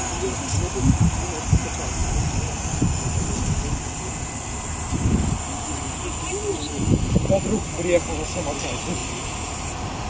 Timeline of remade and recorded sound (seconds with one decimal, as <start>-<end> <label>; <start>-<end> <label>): 0.0-10.1 recorded